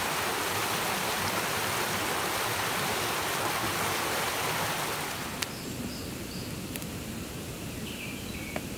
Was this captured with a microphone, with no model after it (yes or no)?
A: no